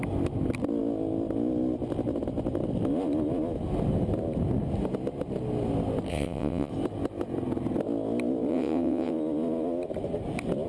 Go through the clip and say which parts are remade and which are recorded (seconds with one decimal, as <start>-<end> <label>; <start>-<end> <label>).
0.0-6.1 recorded; 6.1-6.7 remade; 6.7-8.5 recorded; 8.5-9.1 remade; 9.1-10.7 recorded